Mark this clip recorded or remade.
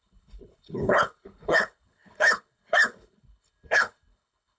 remade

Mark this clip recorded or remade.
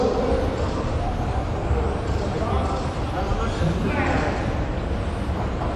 recorded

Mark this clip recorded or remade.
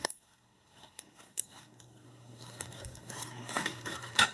remade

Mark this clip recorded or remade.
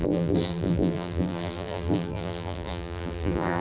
remade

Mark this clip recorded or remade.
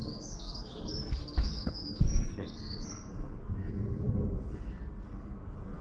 remade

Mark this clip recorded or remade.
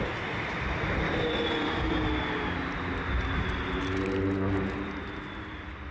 recorded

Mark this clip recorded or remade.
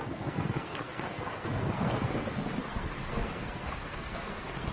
remade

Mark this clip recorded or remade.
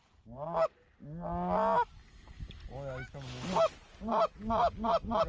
recorded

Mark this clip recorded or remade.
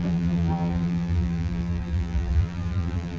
remade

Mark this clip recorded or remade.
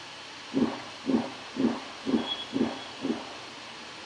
recorded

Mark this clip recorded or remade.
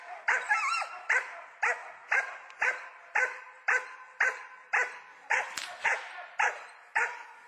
remade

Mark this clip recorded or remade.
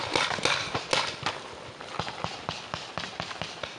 recorded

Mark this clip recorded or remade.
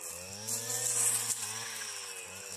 recorded